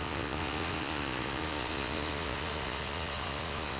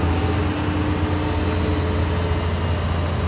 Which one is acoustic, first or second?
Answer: second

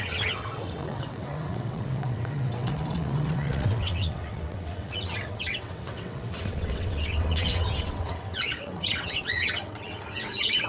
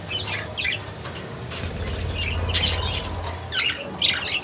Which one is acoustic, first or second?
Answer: second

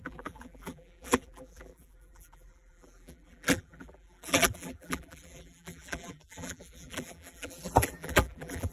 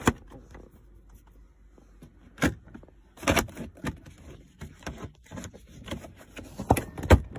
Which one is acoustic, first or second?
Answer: second